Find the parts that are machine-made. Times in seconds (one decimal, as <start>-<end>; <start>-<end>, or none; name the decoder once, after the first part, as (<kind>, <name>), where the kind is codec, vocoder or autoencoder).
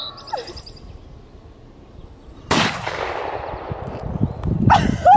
none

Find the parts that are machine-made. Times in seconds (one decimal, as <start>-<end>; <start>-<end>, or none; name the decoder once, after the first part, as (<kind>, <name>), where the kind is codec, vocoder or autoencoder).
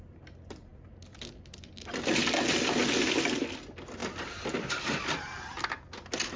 none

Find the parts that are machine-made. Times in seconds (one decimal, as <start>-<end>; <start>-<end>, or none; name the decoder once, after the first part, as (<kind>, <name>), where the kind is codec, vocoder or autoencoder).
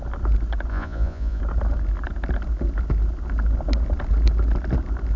0.7-1.4 (vocoder, Vocos)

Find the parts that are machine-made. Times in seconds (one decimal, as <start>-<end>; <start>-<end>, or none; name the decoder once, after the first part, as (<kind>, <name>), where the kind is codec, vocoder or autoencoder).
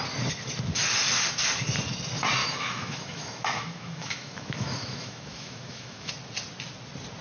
2.4-6.1 (autoencoder, DAC-VAE)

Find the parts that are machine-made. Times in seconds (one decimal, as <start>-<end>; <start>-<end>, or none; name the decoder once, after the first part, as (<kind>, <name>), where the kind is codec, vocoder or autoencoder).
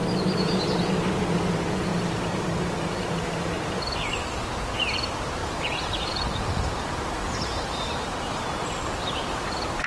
1.9-3.1 (vocoder, BigVGAN v2); 5.4-9.1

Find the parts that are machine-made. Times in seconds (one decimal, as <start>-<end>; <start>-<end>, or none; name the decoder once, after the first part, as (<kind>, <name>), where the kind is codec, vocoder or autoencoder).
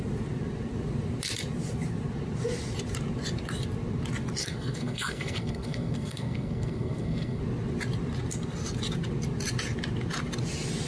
4.4-7.4 (codec, SNAC)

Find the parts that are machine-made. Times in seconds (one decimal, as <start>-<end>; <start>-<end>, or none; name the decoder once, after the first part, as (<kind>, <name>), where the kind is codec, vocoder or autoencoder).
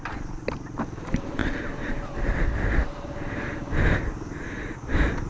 1.4-2.3 (vocoder, BigVGAN v2); 2.8-3.5